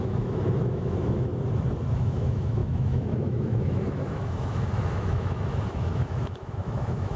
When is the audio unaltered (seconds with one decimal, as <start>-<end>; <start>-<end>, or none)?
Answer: 1.3-1.9